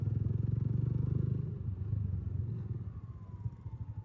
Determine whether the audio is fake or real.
real